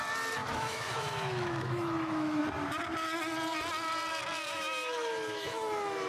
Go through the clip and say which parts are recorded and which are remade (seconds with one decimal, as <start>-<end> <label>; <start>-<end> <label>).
0.0-0.4 recorded; 0.4-2.4 remade; 2.4-4.5 recorded; 4.5-6.1 remade